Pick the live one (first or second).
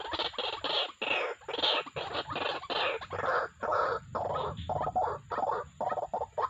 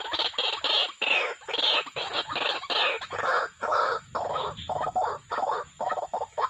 first